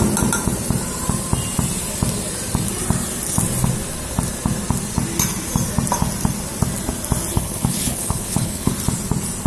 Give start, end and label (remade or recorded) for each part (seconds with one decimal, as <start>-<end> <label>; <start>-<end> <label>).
0.0-7.3 recorded; 7.3-8.7 remade; 8.7-9.5 recorded

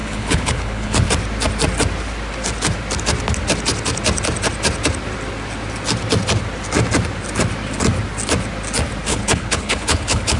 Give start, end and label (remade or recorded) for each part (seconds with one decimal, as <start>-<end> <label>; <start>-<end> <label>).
0.0-1.1 remade; 1.1-9.1 recorded; 9.1-10.4 remade

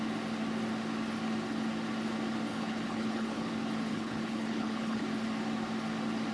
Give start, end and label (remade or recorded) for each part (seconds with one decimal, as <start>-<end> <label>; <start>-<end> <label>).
0.0-2.5 recorded; 2.5-3.5 remade; 3.5-3.9 recorded; 3.9-5.0 remade; 5.0-6.3 recorded

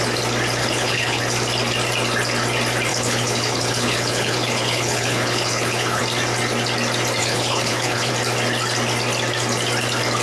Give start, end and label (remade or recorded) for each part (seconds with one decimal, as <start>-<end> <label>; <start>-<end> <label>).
0.0-0.6 recorded; 0.6-1.2 remade; 1.2-2.9 recorded; 2.9-6.0 remade; 6.0-7.2 recorded; 7.2-8.1 remade; 8.1-10.2 recorded

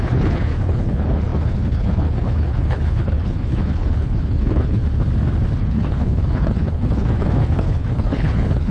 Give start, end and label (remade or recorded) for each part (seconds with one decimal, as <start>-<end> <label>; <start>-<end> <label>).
0.0-4.8 remade; 4.8-5.6 recorded; 5.6-8.7 remade

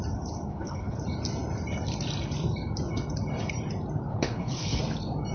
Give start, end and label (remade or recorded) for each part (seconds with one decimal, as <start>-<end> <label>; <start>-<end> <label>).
0.0-0.5 recorded; 0.5-1.0 remade; 1.0-4.1 recorded; 4.1-4.8 remade; 4.8-5.3 recorded

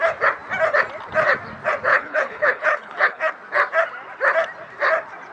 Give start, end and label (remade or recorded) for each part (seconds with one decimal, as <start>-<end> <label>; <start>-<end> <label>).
0.0-1.9 recorded; 1.9-3.3 remade; 3.3-5.3 recorded